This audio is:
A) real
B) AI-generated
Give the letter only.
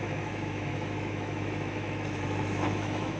B